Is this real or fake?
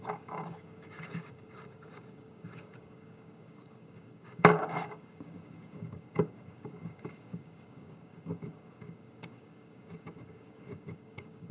fake